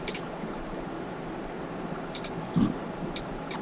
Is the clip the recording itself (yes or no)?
yes